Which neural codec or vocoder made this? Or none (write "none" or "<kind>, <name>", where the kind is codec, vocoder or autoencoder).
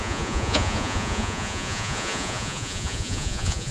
vocoder, Vocos